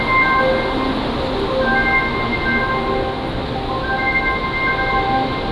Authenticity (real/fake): real